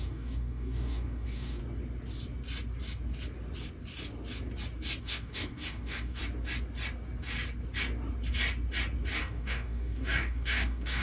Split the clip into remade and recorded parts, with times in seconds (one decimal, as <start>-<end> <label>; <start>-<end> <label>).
0.0-1.6 remade; 1.6-5.0 recorded; 5.0-6.2 remade; 6.2-9.2 recorded; 9.2-11.0 remade